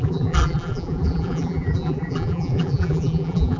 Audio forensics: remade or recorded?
remade